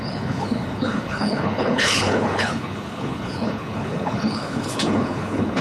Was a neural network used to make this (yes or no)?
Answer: yes